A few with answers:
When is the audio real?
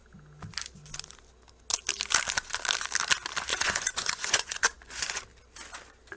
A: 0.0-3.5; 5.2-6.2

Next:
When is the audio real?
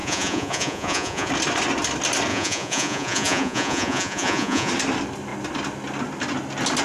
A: 1.3-2.3; 4.7-6.8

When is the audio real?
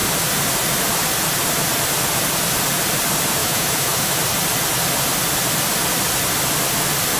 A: 0.0-3.4; 4.2-7.2